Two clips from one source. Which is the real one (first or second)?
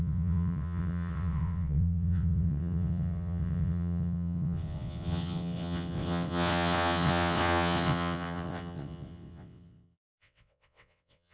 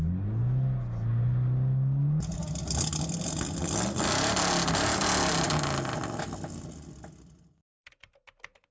second